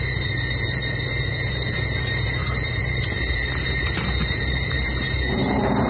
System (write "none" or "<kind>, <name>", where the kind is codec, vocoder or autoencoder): vocoder, BigVGAN v2